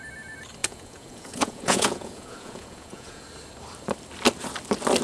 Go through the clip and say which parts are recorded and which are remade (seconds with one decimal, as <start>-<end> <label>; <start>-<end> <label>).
0.0-0.6 recorded; 0.6-3.2 remade; 3.2-5.0 recorded